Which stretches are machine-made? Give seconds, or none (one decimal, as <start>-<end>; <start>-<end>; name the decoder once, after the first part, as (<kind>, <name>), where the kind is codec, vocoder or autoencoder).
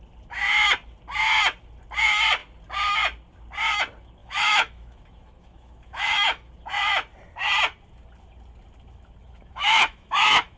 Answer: 4.2-6.5 (autoencoder, DAC-VAE); 9.2-10.6